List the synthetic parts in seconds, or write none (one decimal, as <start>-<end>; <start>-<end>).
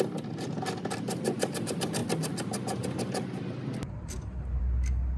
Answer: none